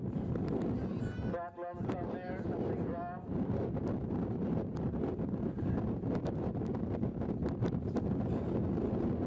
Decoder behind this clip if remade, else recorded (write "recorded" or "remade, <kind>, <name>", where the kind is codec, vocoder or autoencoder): recorded